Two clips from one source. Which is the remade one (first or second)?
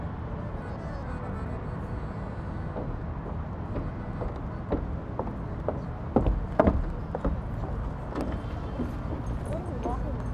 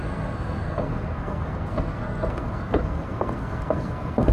second